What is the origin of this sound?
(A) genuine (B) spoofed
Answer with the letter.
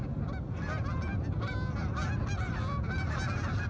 A